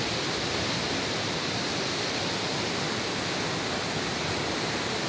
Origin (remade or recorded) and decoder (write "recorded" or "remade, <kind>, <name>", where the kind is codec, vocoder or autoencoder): recorded